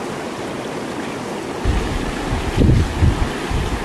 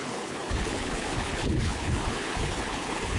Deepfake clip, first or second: second